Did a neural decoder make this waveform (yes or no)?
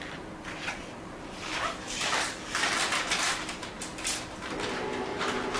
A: yes